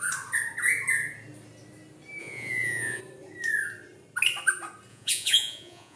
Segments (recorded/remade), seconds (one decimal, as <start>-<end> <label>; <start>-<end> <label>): 0.0-2.2 recorded; 2.2-3.0 remade; 3.0-4.9 recorded; 4.9-6.0 remade